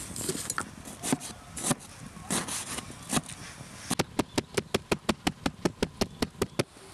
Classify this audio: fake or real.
real